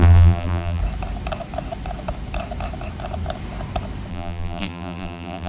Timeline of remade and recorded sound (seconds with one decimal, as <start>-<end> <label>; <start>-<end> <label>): 0.0-0.8 remade; 0.8-4.1 recorded; 4.1-5.5 remade